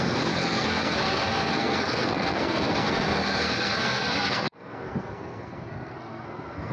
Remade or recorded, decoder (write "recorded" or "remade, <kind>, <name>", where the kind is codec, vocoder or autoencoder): remade, codec, SNAC